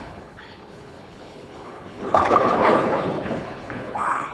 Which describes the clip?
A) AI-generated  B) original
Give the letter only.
A